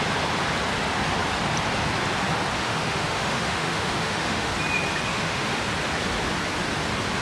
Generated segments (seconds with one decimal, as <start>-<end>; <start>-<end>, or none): 2.6-4.5; 5.1-5.6